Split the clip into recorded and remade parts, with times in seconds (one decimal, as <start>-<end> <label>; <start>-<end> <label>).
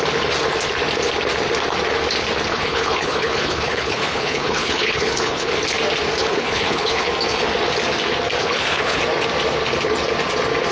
0.0-2.5 recorded; 2.5-5.5 remade; 5.5-6.2 recorded; 6.2-7.1 remade; 7.1-8.4 recorded; 8.4-9.0 remade; 9.0-10.7 recorded